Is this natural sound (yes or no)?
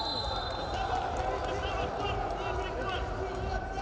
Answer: yes